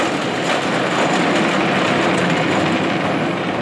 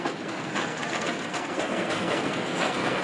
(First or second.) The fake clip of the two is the second